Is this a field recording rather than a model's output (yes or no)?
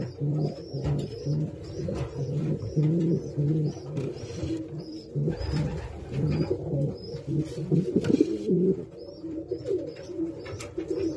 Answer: no